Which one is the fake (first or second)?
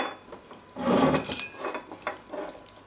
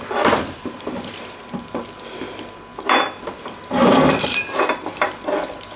second